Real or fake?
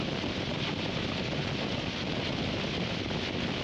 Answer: real